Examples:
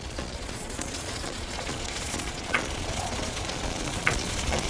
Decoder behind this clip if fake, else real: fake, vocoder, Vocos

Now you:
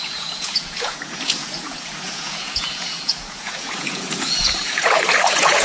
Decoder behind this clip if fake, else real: fake, vocoder, Vocos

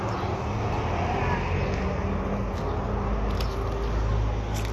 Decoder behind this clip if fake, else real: real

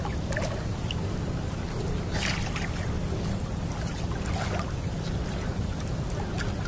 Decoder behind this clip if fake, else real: real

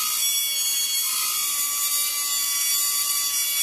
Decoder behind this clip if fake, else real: real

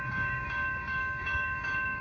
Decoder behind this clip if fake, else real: fake, codec, DAC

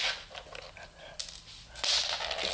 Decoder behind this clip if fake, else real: real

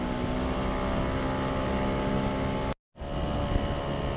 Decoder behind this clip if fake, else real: real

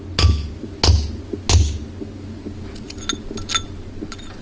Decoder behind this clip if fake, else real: real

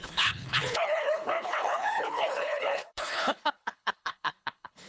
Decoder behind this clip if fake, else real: fake, codec, HILCodec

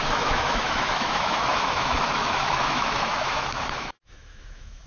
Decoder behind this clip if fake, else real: fake, autoencoder, DAC-VAE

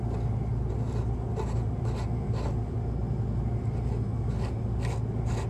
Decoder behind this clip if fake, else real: real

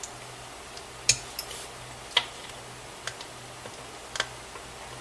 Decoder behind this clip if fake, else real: real